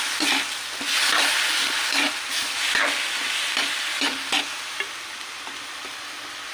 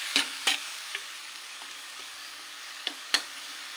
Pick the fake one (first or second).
second